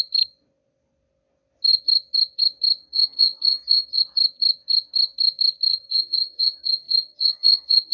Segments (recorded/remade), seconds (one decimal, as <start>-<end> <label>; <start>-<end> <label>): 0.0-2.8 recorded; 2.8-4.0 remade; 4.0-5.7 recorded; 5.7-7.9 remade